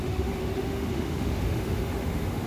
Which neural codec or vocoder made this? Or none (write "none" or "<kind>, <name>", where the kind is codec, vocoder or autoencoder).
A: autoencoder, DAC-VAE